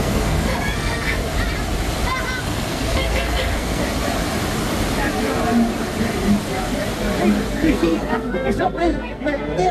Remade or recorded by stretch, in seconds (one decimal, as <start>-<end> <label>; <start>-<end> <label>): 0.0-1.2 remade; 1.2-2.4 recorded; 2.4-3.8 remade; 3.8-7.5 recorded; 7.5-9.7 remade